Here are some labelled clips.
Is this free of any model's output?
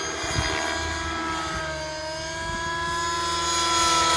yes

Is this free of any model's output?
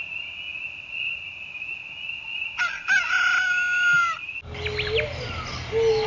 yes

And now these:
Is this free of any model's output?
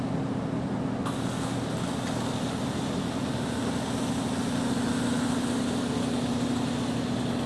yes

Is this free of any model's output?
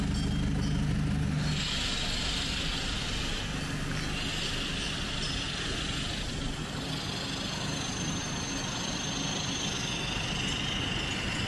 yes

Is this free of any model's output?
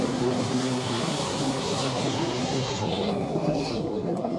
no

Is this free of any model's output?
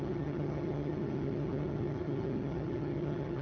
no